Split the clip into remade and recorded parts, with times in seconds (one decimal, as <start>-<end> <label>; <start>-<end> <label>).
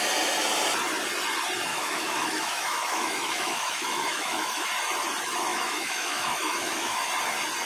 0.0-1.7 recorded; 1.7-4.7 remade; 4.7-5.5 recorded; 5.5-7.1 remade; 7.1-7.6 recorded